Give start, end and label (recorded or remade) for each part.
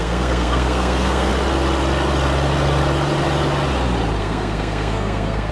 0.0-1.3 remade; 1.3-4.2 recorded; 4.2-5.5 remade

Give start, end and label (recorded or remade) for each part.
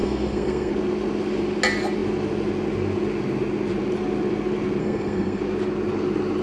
0.0-0.7 remade; 0.7-4.8 recorded; 4.8-5.4 remade; 5.4-6.4 recorded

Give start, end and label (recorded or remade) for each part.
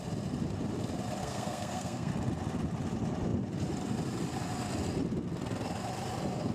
0.0-1.2 recorded; 1.2-2.1 remade; 2.1-6.5 recorded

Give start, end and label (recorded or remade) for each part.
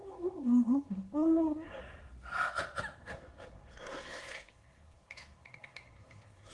0.0-1.8 remade; 1.8-3.0 recorded; 3.0-6.5 remade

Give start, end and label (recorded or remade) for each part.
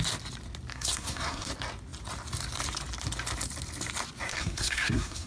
0.0-0.7 recorded; 0.7-1.5 remade; 1.5-4.3 recorded; 4.3-5.3 remade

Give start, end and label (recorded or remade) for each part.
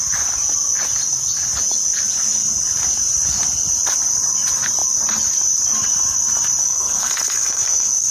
0.0-6.6 recorded; 6.6-8.1 remade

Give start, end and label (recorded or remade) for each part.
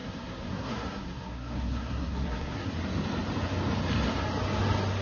0.0-2.7 remade; 2.7-5.0 recorded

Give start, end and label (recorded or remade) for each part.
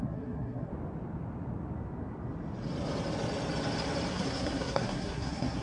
0.0-0.7 remade; 0.7-4.1 recorded; 4.1-5.6 remade